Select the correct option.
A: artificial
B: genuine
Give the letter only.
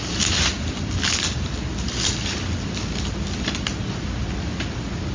B